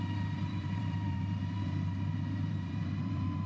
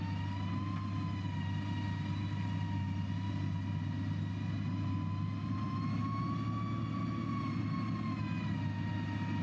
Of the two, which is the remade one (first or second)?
first